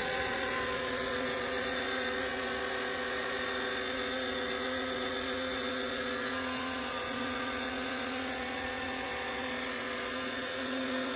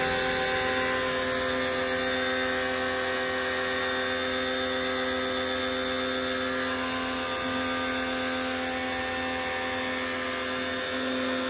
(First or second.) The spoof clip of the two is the first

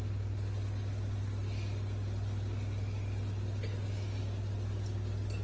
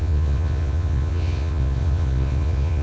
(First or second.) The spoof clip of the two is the second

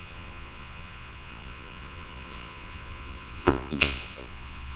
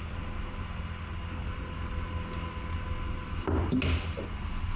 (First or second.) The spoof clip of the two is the first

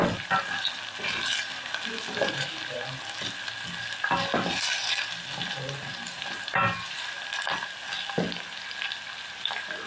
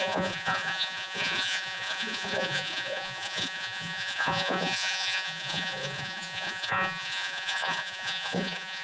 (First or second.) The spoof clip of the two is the second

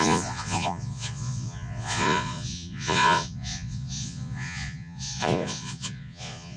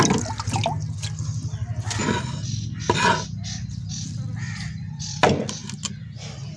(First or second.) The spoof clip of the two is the first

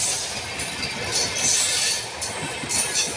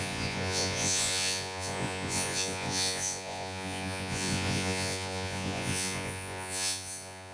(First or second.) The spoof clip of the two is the second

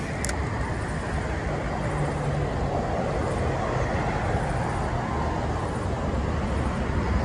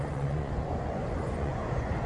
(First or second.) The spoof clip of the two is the second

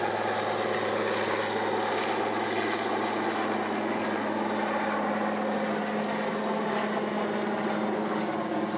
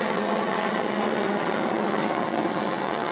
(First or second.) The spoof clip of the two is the second